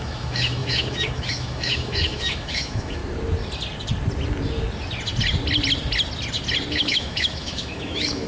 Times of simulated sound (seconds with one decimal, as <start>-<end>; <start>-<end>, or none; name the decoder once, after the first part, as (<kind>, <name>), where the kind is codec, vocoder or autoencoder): 0.0-3.0 (autoencoder, DAC-VAE); 6.7-8.3